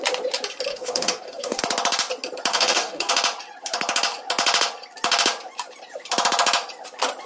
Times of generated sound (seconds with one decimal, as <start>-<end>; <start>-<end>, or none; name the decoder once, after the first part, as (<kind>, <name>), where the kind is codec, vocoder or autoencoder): 0.7-1.6 (codec, DAC); 2.5-3.1

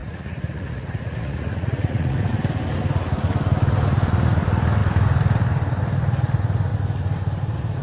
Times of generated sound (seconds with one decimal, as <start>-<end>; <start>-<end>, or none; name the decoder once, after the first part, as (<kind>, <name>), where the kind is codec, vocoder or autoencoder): 0.0-2.3 (vocoder, Vocos)

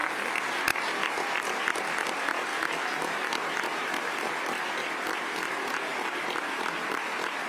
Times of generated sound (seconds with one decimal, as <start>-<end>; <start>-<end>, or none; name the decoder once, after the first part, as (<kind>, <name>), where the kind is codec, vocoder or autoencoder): 2.5-4.3 (vocoder, BigVGAN v2); 5.9-7.0

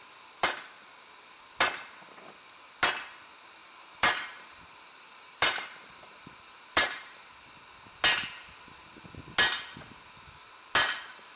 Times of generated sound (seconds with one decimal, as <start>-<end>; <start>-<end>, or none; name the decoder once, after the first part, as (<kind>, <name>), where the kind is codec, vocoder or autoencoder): 3.6-7.3 (vocoder, BigVGAN v2)